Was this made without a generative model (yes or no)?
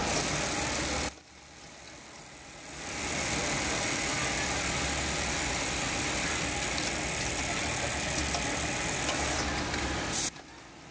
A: yes